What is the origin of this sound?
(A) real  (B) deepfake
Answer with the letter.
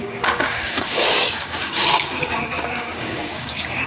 B